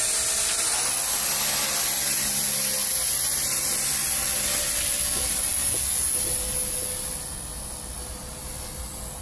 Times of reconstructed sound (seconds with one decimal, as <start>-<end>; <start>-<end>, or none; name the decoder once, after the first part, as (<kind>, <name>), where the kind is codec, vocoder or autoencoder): none